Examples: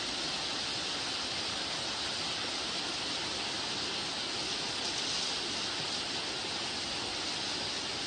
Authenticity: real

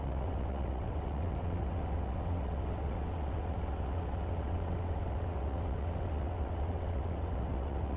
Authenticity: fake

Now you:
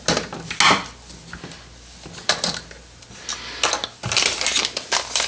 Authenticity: real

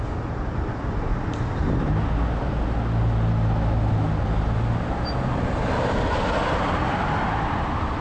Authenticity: real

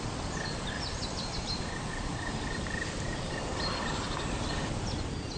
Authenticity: real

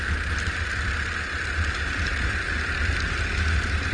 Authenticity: real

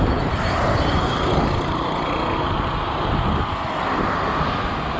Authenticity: real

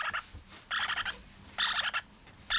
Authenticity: real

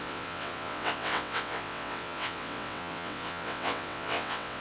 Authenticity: fake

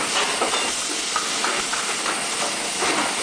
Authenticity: real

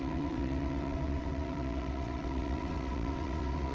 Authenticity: fake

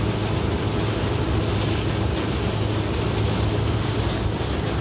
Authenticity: real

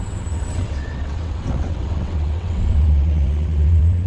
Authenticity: fake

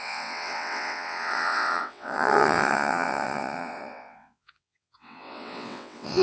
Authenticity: fake